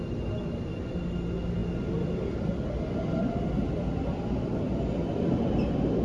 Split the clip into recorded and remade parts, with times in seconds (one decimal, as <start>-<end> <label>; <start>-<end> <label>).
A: 0.0-6.0 recorded